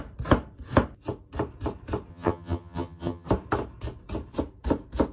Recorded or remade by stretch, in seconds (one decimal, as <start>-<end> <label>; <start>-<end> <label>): 0.0-2.1 recorded; 2.1-3.3 remade; 3.3-5.1 recorded